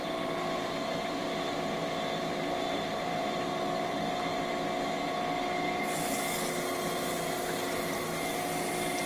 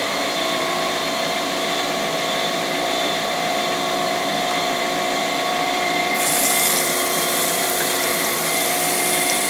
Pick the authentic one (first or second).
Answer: first